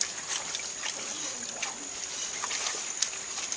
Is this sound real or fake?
real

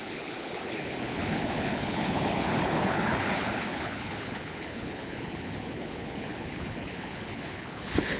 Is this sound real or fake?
fake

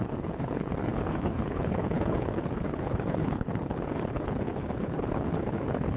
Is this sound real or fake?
fake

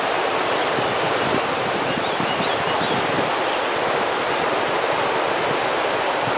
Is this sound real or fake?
real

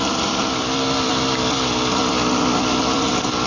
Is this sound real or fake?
real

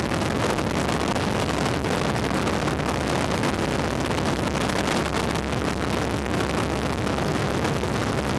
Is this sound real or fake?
real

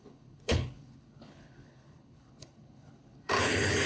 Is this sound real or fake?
fake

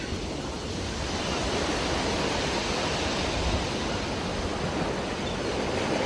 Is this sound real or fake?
real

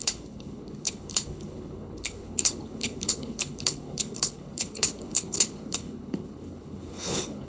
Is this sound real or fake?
fake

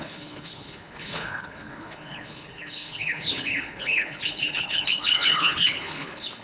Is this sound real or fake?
fake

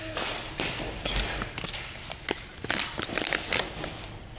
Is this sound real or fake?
real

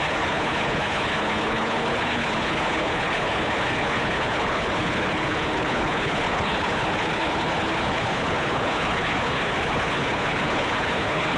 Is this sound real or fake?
fake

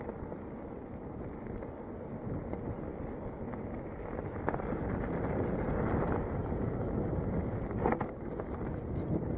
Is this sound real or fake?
real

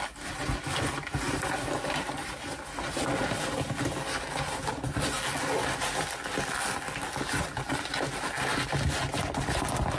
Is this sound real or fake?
real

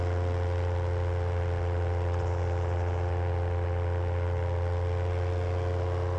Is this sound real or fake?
real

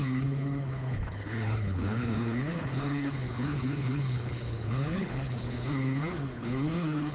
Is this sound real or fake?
fake